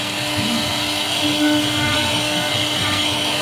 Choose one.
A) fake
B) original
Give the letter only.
A